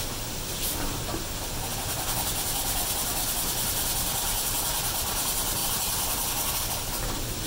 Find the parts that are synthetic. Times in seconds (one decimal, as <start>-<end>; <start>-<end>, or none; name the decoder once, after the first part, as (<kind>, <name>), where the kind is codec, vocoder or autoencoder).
none